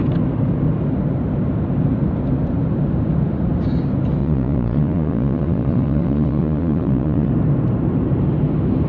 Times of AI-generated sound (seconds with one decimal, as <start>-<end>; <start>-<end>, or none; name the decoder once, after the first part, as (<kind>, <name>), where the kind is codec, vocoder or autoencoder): 4.2-7.3 (vocoder, Vocos)

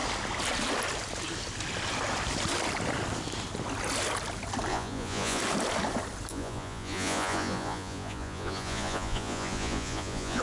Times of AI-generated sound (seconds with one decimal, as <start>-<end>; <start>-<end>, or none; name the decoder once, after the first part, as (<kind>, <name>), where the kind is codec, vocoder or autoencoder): 4.7-5.4 (vocoder, Vocos); 6.3-10.4

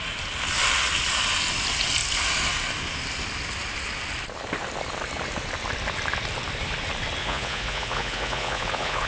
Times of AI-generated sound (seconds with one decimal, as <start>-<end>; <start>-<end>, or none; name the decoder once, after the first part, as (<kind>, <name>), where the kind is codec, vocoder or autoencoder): 7.2-9.1 (vocoder, Vocos)

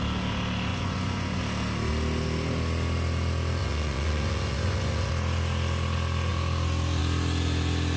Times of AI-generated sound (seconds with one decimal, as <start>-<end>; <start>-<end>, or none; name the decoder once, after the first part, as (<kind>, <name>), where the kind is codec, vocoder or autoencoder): 0.7-1.4 (vocoder, Vocos); 3.6-5.1

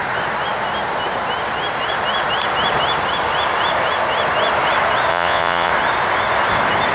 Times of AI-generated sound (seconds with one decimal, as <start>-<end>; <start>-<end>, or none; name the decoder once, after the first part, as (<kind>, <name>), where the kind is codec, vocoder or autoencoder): 5.1-5.7 (vocoder, Vocos)

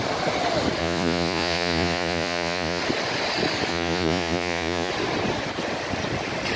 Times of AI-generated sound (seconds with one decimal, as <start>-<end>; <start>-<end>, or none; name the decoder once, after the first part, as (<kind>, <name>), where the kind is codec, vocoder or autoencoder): 0.8-2.8 (vocoder, Vocos); 3.7-4.9

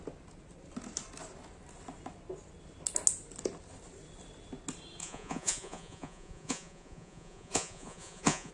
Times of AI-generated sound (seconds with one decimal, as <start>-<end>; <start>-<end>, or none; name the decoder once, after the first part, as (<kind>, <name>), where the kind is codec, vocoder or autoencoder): 5.0-8.5 (vocoder, Vocos)

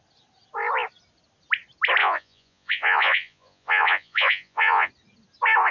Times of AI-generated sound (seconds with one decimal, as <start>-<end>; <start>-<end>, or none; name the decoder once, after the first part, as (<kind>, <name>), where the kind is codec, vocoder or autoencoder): 2.0-4.9 (vocoder, Vocos)